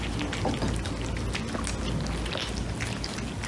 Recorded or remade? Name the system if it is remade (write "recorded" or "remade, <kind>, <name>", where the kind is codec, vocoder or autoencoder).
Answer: recorded